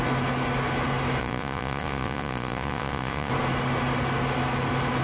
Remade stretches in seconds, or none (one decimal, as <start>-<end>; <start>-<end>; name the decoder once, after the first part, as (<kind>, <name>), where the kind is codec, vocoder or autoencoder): 1.2-3.3 (vocoder, Vocos)